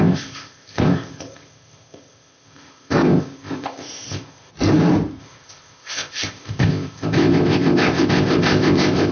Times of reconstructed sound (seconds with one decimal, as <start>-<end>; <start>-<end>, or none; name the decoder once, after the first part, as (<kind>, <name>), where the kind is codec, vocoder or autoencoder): 0.0-4.5 (codec, ZipCodec); 5.2-9.1